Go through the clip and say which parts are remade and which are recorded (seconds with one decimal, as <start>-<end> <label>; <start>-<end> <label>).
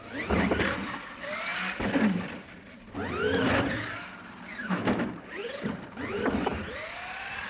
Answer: 0.0-4.6 recorded; 4.6-5.1 remade; 5.1-7.5 recorded